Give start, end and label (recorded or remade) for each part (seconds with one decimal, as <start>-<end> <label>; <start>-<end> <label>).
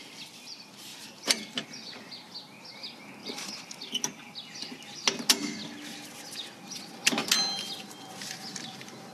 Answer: 0.0-3.2 recorded; 3.2-3.9 remade; 3.9-9.1 recorded